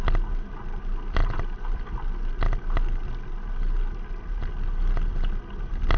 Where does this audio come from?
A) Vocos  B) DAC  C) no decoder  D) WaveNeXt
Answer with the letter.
C